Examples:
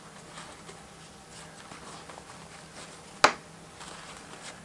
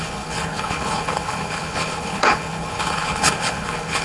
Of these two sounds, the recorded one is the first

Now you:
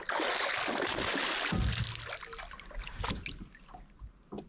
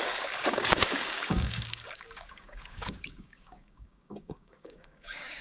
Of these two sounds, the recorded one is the first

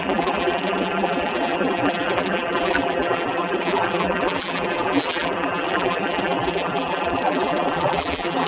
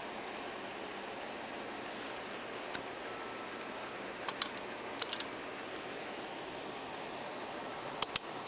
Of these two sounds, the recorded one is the second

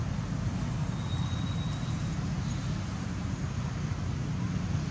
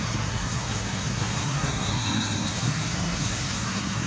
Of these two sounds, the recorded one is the first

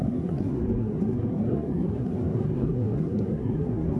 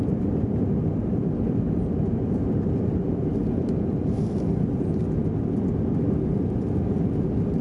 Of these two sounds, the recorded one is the second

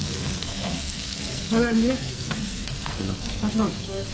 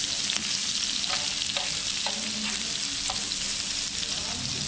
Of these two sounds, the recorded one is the second